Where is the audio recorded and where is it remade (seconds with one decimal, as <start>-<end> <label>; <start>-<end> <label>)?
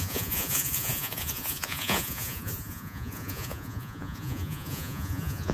0.0-5.5 remade